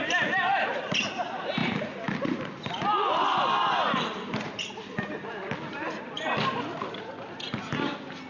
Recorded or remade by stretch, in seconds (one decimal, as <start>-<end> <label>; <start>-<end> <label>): 0.0-8.3 recorded